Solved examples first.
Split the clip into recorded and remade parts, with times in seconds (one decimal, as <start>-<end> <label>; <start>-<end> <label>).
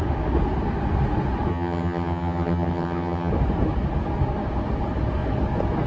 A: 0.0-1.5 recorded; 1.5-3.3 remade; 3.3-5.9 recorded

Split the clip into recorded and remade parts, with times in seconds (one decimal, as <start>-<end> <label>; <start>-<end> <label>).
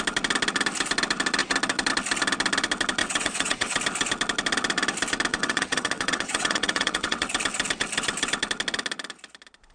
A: 0.0-3.0 recorded; 3.0-3.7 remade; 3.7-5.3 recorded; 5.3-7.3 remade; 7.3-9.7 recorded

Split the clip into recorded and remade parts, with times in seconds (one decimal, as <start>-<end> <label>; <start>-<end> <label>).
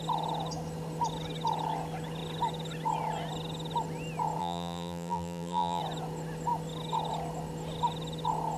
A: 0.0-4.4 recorded; 4.4-5.8 remade; 5.8-8.6 recorded